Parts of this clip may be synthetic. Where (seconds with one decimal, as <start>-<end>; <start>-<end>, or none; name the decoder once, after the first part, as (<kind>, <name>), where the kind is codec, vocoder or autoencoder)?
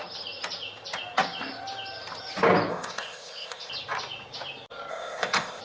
2.7-3.7 (codec, ZipCodec); 4.9-5.6